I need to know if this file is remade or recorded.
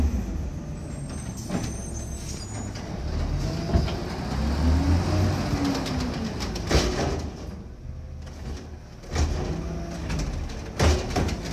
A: recorded